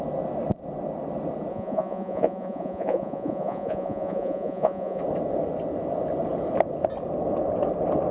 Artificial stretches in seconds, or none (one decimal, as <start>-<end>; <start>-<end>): 1.5-5.0